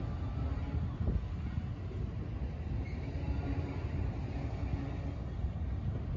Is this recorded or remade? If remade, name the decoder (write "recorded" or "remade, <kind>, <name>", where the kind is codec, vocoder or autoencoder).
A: recorded